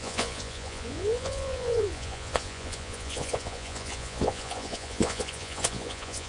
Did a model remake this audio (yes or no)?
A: yes